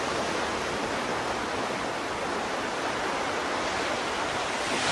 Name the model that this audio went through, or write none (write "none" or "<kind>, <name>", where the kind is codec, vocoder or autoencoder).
none